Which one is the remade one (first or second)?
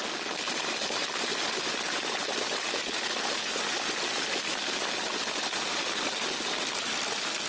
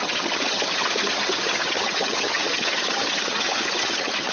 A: second